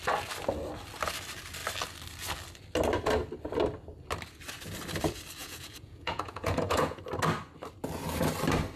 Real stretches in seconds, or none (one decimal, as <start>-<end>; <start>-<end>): 0.0-5.4; 7.0-8.8